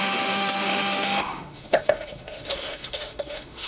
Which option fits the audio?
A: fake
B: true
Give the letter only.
A